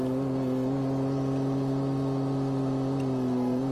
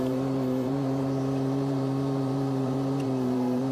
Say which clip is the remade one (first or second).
second